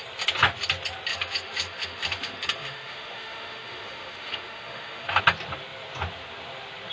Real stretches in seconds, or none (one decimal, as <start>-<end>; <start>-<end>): 0.0-1.1; 5.2-6.9